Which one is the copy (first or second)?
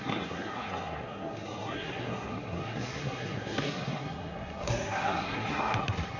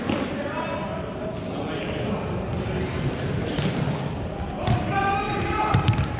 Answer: first